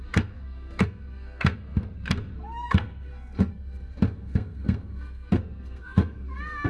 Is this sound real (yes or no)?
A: no